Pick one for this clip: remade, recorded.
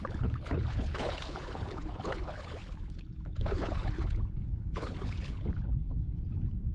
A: remade